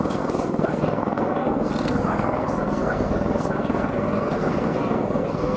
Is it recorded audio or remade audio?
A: remade